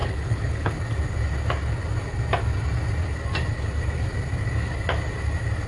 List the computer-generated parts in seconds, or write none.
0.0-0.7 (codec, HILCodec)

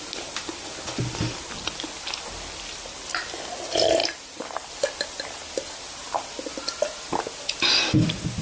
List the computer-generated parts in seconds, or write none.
4.0-4.7 (vocoder, BigVGAN v2)

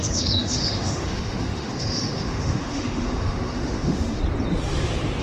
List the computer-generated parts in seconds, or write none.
0.0-4.2 (autoencoder, DAC-VAE)

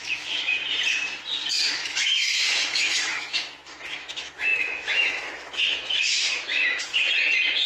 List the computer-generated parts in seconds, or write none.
0.0-0.6 (autoencoder, DAC-VAE); 1.7-6.9

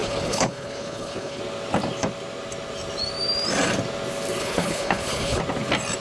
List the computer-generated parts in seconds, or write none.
0.0-1.4 (codec, HILCodec); 4.4-5.4